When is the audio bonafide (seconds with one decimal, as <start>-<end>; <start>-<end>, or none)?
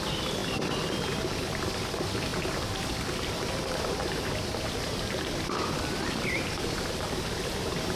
0.0-2.3; 6.4-8.0